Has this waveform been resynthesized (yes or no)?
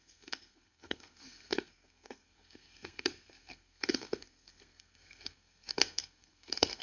yes